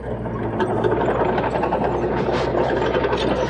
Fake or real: real